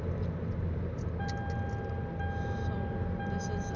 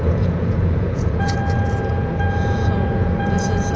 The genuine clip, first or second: first